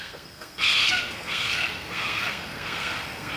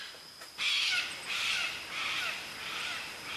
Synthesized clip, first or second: first